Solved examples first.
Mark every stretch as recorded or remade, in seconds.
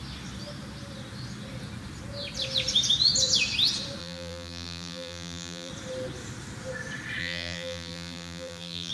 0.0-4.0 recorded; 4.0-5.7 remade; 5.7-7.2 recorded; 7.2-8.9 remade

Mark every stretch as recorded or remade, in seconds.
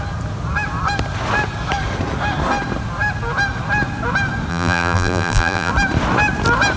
0.0-4.5 recorded; 4.5-5.7 remade; 5.7-6.8 recorded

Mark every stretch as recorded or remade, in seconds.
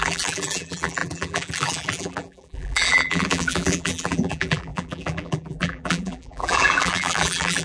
0.0-7.6 remade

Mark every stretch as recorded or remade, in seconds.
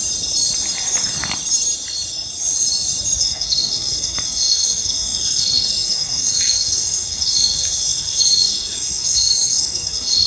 0.0-3.2 recorded; 3.2-10.3 remade